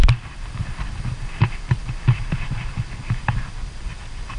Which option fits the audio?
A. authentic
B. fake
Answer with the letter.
B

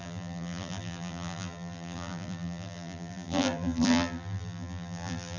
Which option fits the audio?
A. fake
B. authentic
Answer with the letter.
A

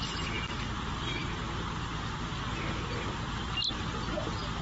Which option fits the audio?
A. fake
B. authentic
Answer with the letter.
B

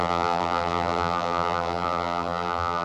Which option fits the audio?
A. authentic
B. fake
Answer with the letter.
B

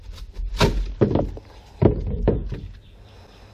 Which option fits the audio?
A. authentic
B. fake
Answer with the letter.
A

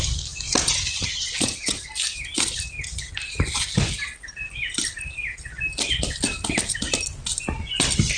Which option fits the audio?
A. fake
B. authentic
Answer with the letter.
B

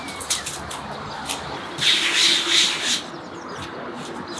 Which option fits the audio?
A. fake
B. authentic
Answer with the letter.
A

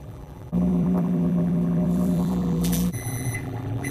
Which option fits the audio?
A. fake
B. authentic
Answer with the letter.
A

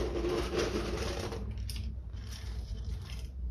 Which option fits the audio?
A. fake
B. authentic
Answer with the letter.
A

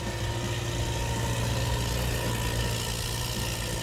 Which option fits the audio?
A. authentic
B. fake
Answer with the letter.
A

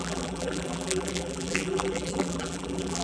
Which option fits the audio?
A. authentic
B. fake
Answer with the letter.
B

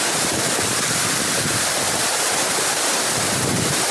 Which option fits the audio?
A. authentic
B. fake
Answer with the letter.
B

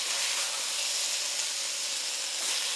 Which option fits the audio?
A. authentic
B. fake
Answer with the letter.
A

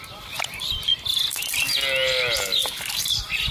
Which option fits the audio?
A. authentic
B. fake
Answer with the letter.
A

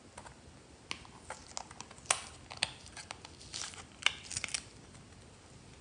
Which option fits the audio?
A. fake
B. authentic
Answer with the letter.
B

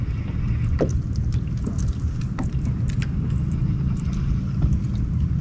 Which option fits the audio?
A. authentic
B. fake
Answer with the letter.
A